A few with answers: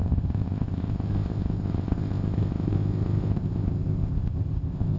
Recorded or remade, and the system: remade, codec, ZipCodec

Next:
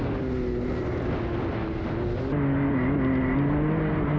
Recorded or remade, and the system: recorded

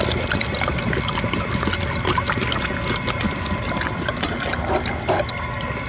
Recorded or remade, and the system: recorded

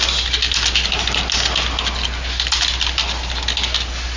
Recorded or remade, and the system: recorded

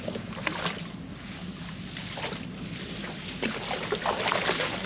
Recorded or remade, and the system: recorded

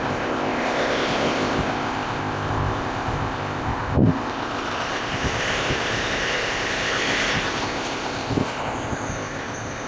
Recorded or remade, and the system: remade, codec, ZipCodec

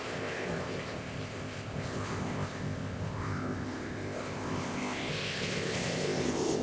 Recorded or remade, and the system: remade, codec, ZipCodec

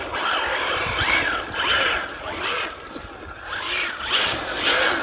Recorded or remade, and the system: recorded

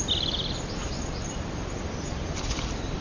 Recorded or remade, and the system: recorded